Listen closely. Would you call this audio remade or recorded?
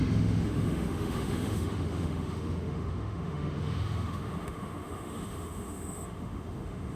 remade